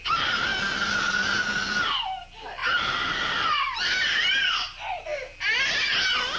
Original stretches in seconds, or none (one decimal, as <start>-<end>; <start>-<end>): 0.0-6.4